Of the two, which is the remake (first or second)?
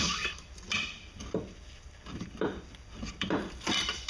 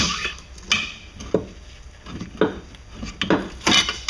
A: first